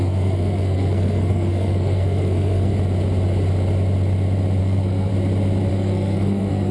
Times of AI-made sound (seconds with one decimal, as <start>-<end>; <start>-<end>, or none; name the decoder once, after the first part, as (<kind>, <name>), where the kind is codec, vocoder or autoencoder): 0.0-2.7 (codec, SNAC); 4.6-5.1; 5.7-6.7